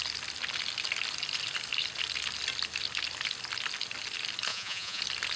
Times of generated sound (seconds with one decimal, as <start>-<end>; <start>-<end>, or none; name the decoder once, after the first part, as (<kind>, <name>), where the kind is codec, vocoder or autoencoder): 4.5-5.0 (vocoder, Vocos)